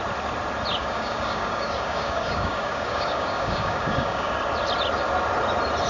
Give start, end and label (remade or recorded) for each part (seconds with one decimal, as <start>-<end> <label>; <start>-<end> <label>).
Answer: 0.0-0.8 recorded; 0.8-4.3 remade; 4.3-5.9 recorded